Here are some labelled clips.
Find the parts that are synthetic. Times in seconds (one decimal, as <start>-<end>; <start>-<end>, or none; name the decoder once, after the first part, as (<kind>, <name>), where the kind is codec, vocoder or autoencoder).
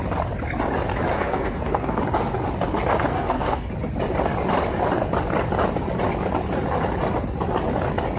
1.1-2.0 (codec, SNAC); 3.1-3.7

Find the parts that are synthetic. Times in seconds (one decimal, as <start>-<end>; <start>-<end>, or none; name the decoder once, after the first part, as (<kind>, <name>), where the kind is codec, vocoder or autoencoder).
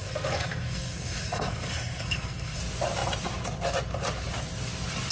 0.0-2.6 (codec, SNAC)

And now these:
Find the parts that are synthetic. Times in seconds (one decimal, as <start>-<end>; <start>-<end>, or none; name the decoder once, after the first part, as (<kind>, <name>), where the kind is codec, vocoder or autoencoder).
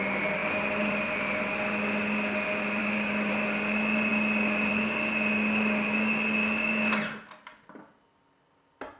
2.8-3.3 (codec, DAC)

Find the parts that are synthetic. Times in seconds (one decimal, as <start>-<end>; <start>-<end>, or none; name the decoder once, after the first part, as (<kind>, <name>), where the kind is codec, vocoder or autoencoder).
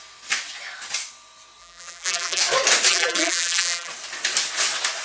1.6-2.4 (vocoder, BigVGAN v2); 2.9-3.9